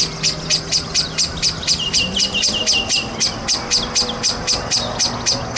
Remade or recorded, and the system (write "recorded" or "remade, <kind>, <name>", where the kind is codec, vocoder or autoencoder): recorded